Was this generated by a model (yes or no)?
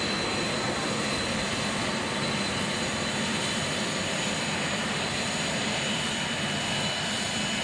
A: no